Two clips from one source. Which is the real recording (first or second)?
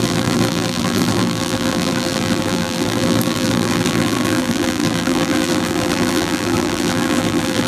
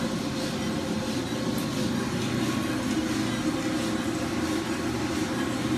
second